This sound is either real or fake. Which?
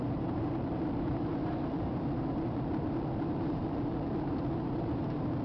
fake